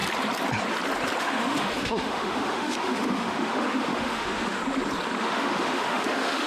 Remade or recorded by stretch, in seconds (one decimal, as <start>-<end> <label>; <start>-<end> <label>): 0.0-1.2 recorded; 1.2-4.6 remade; 4.6-5.2 recorded; 5.2-6.5 remade